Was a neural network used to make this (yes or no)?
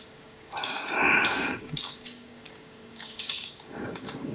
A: yes